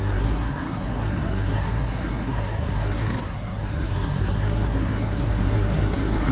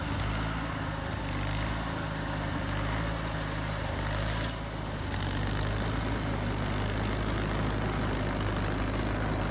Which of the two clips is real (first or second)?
second